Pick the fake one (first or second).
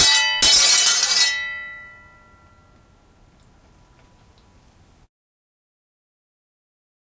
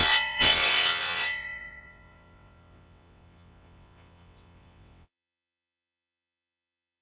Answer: second